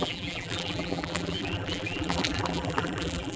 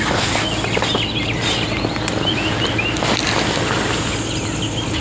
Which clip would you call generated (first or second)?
first